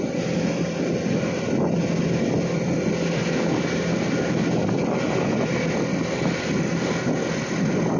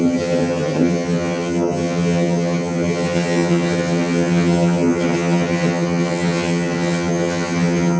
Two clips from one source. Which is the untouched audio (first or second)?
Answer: first